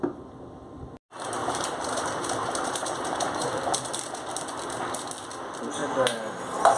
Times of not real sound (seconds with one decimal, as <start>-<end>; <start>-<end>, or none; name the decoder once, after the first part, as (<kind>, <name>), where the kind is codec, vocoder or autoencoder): 1.4-3.6 (vocoder, BigVGAN v2)